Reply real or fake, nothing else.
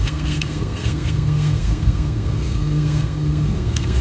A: fake